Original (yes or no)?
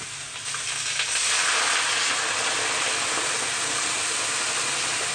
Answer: yes